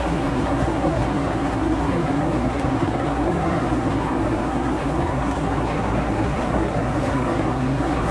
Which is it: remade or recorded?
remade